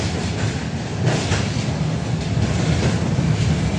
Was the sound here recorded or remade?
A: recorded